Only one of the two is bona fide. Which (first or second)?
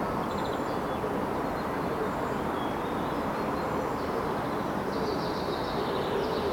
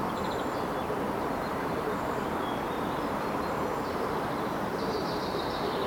first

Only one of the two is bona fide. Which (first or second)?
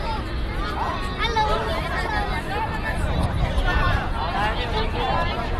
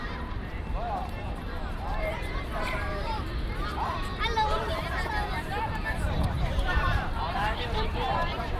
first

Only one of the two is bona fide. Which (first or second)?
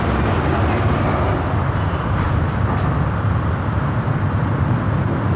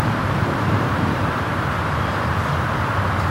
first